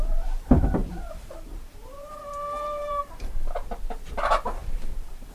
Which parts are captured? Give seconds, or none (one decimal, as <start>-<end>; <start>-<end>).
0.0-0.8; 3.4-4.6